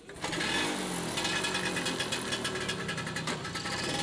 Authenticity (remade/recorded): recorded